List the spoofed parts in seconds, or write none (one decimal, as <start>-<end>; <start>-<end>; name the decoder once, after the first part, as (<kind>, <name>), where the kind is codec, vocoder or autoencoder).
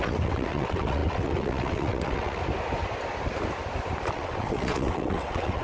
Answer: 0.0-2.4 (vocoder, WaveNeXt); 4.1-5.6